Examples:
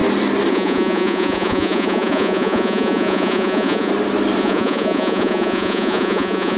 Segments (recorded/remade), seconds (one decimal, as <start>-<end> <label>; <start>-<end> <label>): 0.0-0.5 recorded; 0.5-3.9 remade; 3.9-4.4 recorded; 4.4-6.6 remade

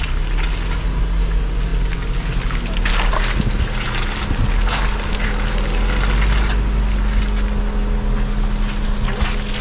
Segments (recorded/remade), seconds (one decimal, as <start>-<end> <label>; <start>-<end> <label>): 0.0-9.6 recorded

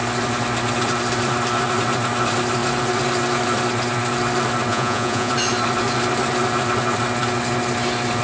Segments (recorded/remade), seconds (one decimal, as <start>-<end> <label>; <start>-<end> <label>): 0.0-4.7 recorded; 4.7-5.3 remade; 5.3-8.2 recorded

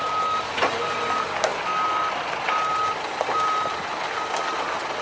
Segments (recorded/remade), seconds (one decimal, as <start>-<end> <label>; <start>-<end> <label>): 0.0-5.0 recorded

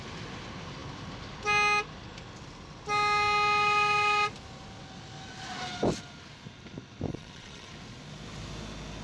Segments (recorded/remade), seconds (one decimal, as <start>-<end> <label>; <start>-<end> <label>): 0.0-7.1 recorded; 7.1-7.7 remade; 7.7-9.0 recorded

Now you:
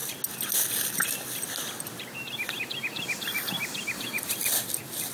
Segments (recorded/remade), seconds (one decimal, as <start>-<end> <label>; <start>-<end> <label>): 0.0-2.6 recorded; 2.6-5.1 remade

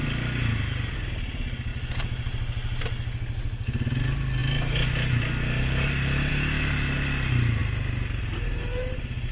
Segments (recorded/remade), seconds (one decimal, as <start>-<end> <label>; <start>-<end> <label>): 0.0-9.3 recorded